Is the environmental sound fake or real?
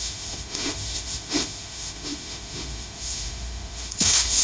fake